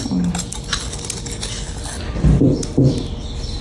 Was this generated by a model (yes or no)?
no